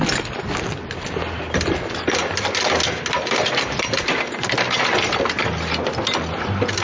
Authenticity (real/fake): real